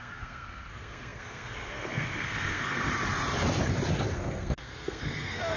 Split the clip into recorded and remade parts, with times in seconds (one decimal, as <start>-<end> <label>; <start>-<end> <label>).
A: 0.0-2.9 remade; 2.9-4.1 recorded; 4.1-5.6 remade